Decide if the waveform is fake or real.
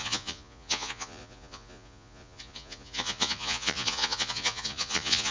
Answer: fake